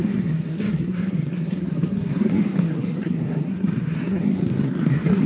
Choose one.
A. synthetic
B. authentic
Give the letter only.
A